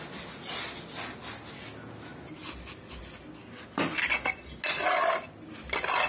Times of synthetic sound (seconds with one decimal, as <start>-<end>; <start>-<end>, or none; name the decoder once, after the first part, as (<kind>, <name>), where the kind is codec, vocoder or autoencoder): none